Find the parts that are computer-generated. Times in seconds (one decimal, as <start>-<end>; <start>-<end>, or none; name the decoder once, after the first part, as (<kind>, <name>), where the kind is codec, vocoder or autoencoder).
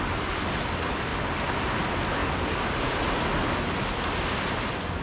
none